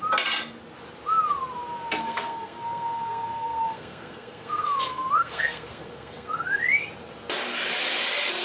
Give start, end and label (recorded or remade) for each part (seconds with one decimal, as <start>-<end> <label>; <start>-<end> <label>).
0.0-2.0 recorded; 2.0-6.6 remade; 6.6-8.4 recorded